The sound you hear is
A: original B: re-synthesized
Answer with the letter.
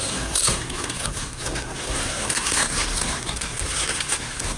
B